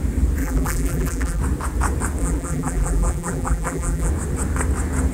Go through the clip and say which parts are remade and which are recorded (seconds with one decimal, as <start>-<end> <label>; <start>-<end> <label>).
0.0-0.4 recorded; 0.4-1.4 remade; 1.4-2.2 recorded; 2.2-4.1 remade; 4.1-5.1 recorded